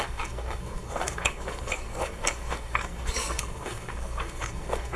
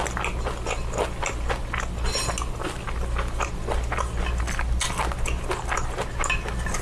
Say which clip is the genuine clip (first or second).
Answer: second